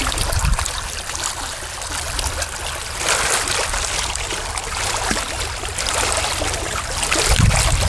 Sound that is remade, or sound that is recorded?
recorded